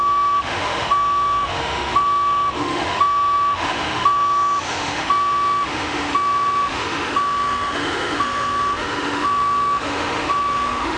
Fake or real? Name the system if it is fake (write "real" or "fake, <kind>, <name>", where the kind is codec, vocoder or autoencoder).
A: fake, autoencoder, DAC-VAE